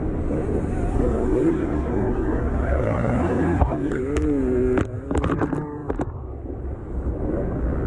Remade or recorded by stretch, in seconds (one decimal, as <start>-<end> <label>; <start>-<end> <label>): 0.0-0.9 recorded; 0.9-4.0 remade; 4.0-7.9 recorded